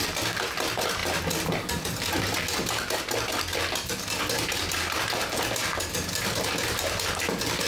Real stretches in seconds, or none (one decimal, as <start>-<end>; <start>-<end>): 0.0-7.7